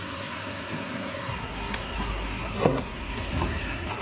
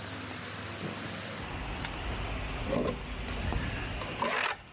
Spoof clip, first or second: first